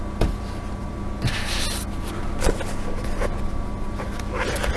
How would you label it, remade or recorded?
recorded